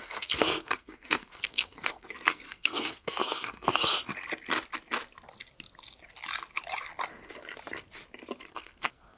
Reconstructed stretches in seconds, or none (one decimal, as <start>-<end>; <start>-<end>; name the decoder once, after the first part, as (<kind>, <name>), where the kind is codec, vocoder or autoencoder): 0.0-3.8 (codec, SNAC); 8.5-9.2